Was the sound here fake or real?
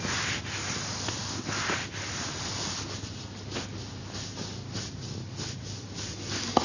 real